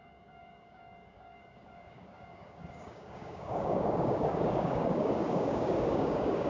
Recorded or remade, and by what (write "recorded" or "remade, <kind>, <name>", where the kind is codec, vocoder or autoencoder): remade, codec, DAC